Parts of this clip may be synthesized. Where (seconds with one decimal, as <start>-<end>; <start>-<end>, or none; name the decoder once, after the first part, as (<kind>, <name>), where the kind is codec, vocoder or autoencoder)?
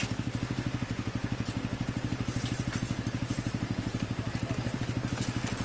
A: 3.3-4.8 (vocoder, BigVGAN v2)